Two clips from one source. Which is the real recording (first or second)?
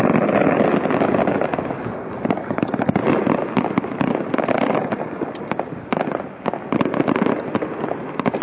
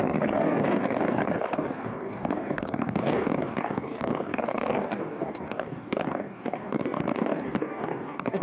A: first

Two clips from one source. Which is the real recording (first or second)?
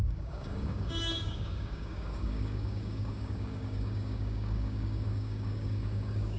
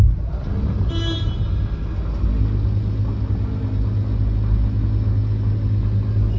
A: second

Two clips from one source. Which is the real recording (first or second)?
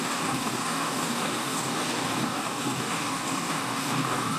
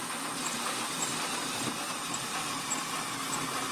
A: second